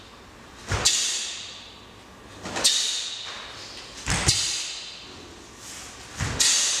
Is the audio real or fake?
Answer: real